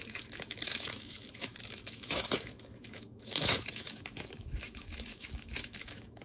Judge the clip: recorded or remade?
remade